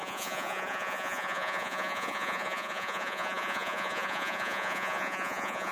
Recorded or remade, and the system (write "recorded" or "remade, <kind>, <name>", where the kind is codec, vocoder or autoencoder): remade, vocoder, Vocos